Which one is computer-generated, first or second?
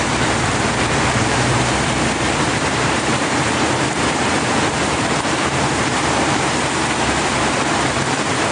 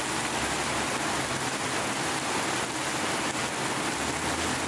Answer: first